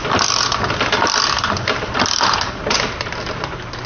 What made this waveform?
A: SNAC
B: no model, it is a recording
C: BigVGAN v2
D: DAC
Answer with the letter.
B